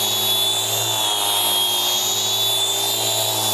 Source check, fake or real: real